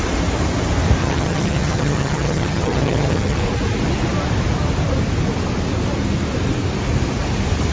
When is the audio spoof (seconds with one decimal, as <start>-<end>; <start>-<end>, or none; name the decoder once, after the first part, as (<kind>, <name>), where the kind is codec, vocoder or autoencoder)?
1.0-3.4 (vocoder, HiFi-GAN)

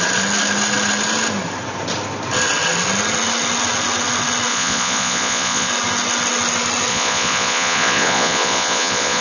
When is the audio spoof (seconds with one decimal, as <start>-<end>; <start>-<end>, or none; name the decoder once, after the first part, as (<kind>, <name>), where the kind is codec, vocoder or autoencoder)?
4.5-5.7 (vocoder, Vocos); 6.9-9.2